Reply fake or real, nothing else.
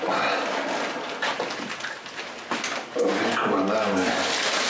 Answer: real